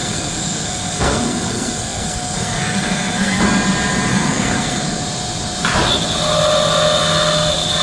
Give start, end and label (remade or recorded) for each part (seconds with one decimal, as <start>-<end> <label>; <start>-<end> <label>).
0.0-3.4 remade; 3.4-4.1 recorded; 4.1-5.0 remade; 5.0-7.8 recorded